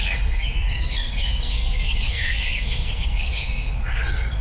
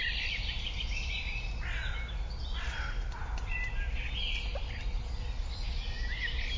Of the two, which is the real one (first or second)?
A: second